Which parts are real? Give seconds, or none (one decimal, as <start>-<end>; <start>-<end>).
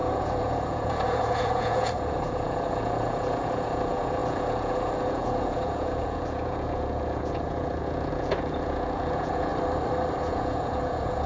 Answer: 9.5-10.2